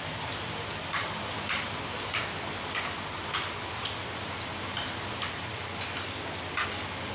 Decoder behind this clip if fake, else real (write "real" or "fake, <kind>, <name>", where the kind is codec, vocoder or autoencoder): real